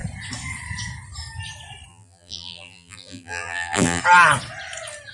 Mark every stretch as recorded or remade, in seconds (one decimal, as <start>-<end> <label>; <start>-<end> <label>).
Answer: 0.0-1.9 recorded; 1.9-4.0 remade; 4.0-5.1 recorded